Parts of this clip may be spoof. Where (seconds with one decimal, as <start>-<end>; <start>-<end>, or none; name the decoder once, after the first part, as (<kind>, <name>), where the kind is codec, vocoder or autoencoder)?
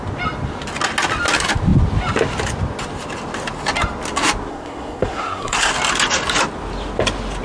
4.5-5.7 (codec, SNAC)